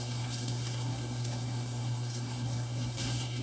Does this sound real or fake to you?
fake